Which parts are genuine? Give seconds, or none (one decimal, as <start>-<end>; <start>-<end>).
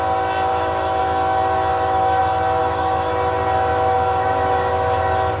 0.0-0.5; 1.0-1.7; 2.2-2.6; 3.1-3.7; 5.0-5.4